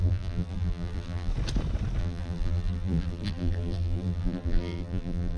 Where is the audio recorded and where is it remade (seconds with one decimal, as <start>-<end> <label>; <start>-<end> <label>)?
0.0-1.3 remade; 1.3-2.0 recorded; 2.0-5.4 remade